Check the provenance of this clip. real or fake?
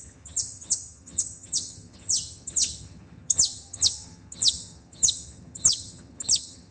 fake